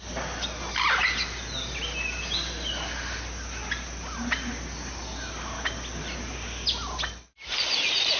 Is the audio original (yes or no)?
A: yes